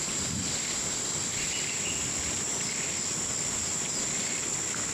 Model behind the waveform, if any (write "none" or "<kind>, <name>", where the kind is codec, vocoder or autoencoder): none